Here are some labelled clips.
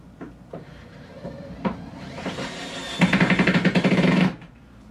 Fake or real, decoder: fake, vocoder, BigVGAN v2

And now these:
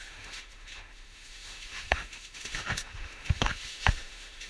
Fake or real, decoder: fake, autoencoder, DAC-VAE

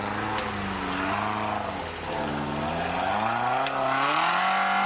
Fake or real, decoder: real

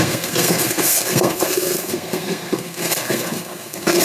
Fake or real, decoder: fake, codec, SNAC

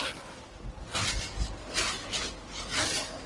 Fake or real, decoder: real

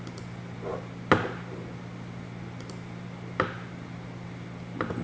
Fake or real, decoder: real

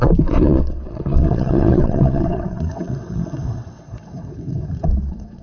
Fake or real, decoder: fake, vocoder, WaveNeXt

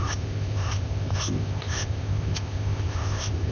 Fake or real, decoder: fake, codec, ZipCodec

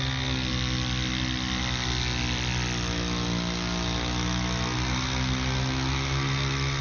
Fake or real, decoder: real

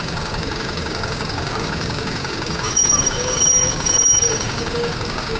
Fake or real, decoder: fake, codec, DAC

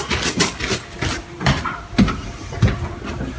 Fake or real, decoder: real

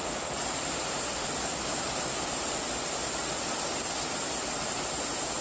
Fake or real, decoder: real